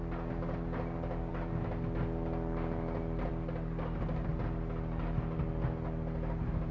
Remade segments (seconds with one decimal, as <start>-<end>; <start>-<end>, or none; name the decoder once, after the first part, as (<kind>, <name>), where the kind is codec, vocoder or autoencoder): none